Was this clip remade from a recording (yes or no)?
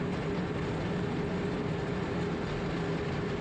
no